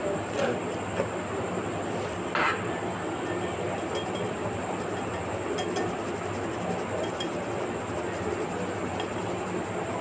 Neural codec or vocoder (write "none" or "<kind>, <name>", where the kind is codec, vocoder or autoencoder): none